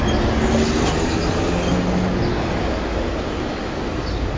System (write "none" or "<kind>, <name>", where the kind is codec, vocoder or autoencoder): none